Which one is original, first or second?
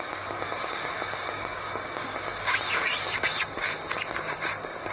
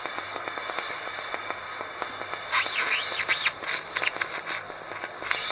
second